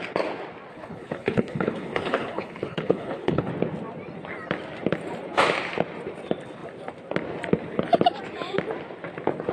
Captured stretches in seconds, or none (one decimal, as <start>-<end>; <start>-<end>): 0.0-0.7; 3.5-9.5